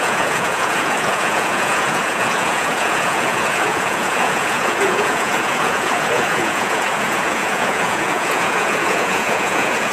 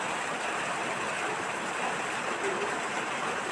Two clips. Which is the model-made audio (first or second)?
first